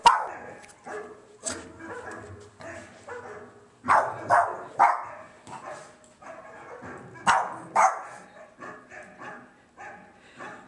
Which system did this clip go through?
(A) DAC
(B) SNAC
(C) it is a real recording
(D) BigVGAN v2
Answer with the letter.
C